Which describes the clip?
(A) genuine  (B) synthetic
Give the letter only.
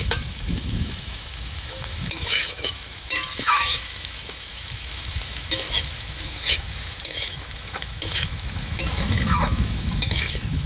B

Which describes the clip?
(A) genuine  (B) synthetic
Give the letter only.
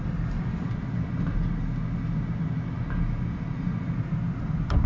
A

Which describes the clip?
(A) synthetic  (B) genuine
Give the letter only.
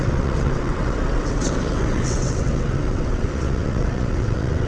A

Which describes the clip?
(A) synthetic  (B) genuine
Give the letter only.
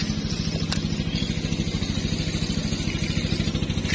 B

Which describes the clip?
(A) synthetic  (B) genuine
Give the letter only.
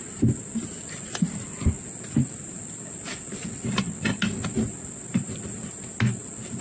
B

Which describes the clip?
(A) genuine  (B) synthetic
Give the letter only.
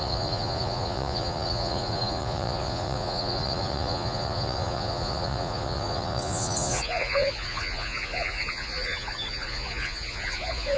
B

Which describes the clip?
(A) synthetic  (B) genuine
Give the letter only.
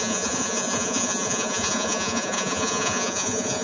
A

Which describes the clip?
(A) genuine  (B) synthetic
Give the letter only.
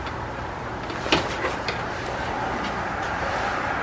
A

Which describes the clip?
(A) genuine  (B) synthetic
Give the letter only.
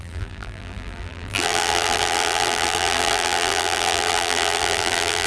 B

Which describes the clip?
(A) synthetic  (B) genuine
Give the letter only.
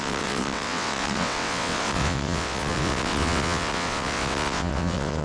A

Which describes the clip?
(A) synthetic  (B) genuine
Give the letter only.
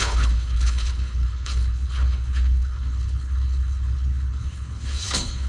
A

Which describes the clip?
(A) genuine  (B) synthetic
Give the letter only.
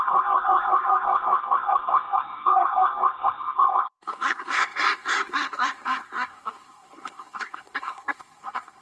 B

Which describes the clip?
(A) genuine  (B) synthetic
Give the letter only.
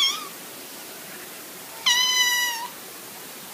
A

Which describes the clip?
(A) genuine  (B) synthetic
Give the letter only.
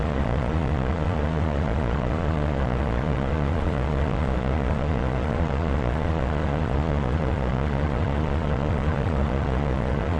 B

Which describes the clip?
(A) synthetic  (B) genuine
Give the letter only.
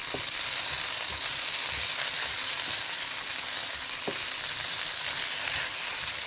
B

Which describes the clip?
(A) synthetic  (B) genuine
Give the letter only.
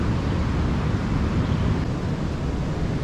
B